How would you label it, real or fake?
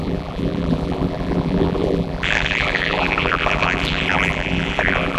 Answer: fake